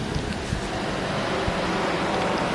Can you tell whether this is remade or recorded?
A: recorded